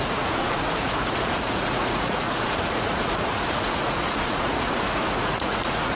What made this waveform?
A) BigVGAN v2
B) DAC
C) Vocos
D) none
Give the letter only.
C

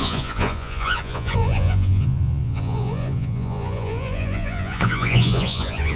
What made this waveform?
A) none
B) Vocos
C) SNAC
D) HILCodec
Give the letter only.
B